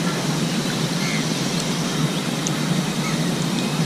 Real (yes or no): yes